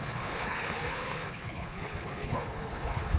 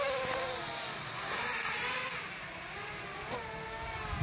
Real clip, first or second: second